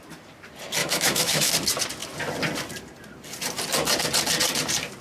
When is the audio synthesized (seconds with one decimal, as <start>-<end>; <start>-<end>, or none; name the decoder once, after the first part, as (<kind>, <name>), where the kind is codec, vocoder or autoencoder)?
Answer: 0.8-1.5 (autoencoder, DAC-VAE)